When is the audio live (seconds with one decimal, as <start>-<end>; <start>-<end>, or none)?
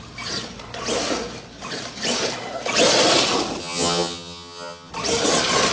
0.0-3.6; 4.9-5.7